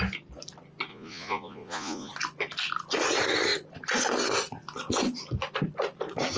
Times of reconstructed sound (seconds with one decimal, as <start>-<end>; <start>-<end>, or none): 0.9-2.1